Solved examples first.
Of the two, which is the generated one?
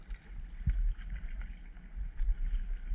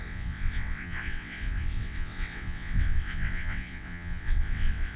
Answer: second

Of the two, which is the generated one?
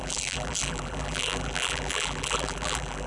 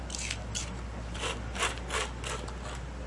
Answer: first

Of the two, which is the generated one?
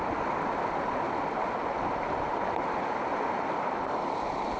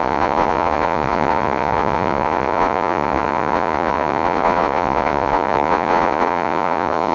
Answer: second